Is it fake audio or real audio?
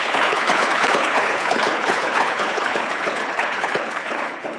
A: fake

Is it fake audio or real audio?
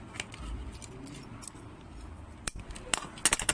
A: real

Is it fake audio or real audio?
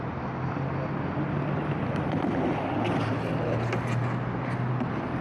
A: real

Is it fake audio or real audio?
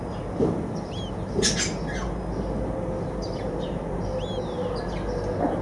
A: real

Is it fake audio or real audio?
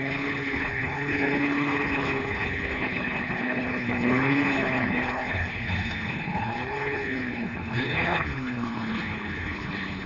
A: fake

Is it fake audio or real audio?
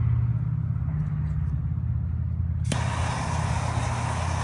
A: real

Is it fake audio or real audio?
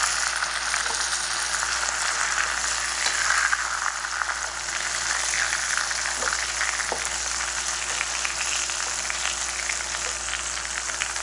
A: real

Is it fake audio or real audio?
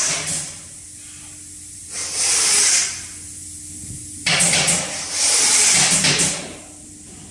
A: real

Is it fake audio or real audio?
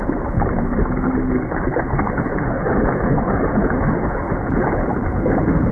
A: fake